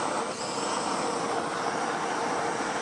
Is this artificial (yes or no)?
no